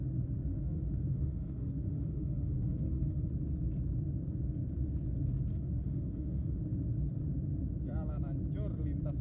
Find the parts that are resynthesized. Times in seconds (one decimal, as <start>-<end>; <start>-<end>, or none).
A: 0.5-3.3; 5.5-6.6